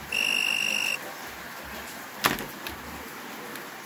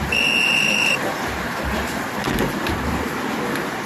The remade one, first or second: second